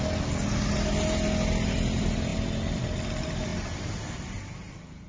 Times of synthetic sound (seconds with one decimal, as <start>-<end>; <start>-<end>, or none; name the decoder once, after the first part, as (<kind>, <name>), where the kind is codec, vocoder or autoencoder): none